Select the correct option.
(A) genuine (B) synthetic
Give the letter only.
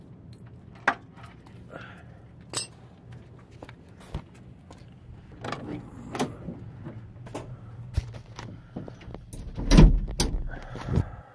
A